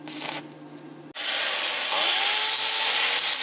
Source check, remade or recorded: recorded